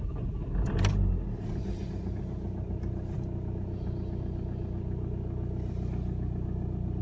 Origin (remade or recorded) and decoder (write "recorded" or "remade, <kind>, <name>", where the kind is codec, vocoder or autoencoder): recorded